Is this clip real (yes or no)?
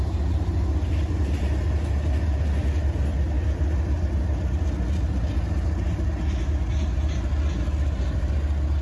yes